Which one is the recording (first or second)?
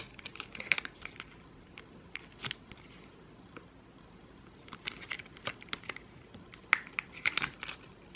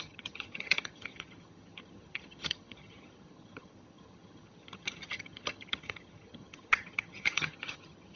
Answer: first